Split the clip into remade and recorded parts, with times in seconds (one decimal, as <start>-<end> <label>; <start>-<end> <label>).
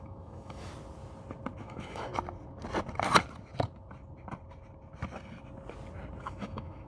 0.0-0.7 remade; 0.7-1.6 recorded; 1.6-2.1 remade; 2.1-6.2 recorded; 6.2-6.9 remade